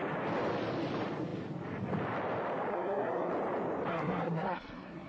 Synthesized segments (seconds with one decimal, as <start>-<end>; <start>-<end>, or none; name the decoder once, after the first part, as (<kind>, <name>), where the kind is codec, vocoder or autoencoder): 2.7-3.3 (codec, SNAC); 3.9-5.1